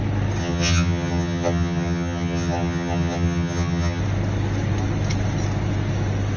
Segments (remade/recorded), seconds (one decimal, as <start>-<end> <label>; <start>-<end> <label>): 0.0-0.4 recorded; 0.4-4.0 remade; 4.0-6.4 recorded